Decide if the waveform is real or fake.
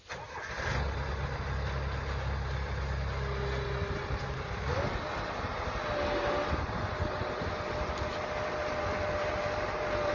real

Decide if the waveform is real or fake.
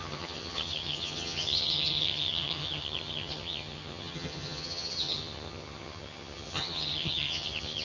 fake